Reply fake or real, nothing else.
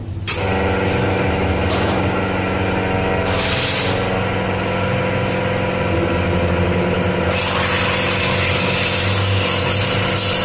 real